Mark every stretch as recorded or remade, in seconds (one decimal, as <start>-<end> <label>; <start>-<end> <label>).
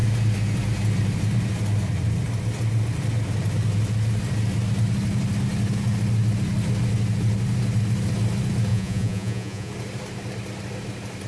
0.0-8.7 recorded; 8.7-9.7 remade; 9.7-11.3 recorded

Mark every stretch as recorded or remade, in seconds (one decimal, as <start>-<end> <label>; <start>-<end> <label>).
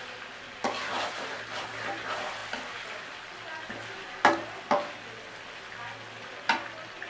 0.0-7.1 recorded